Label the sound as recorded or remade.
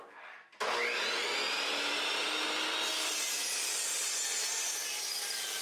recorded